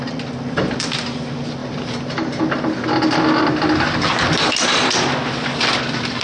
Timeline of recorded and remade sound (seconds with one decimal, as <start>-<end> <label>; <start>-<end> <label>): 0.0-1.6 recorded; 1.6-2.4 remade; 2.4-6.2 recorded